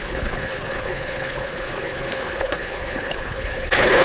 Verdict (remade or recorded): remade